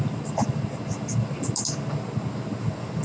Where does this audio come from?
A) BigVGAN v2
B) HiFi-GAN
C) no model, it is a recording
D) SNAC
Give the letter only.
C